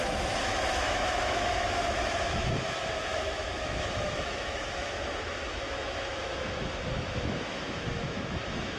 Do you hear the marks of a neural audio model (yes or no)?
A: yes